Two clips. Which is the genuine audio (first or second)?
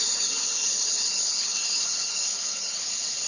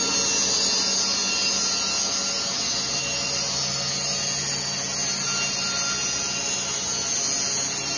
second